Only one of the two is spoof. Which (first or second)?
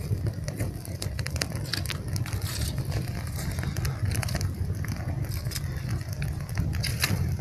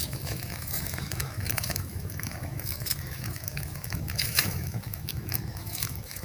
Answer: second